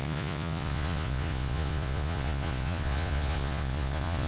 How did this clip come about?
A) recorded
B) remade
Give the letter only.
B